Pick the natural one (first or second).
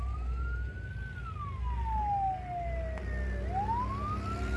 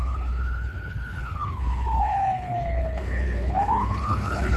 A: first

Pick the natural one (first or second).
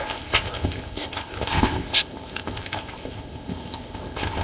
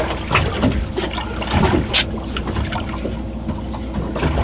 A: second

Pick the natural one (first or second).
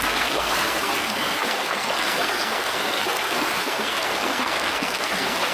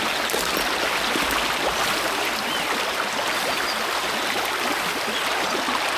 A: second